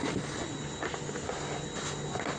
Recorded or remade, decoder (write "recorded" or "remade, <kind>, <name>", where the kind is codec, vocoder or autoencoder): recorded